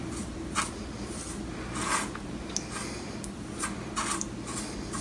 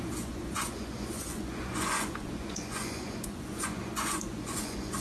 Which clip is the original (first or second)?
first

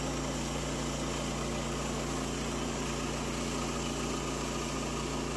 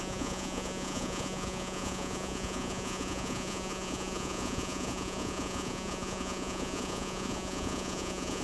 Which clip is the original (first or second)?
first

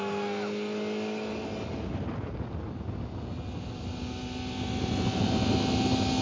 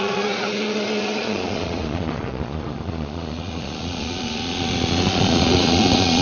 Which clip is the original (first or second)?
first